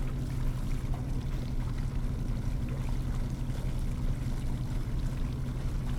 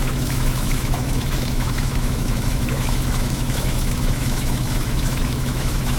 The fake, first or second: second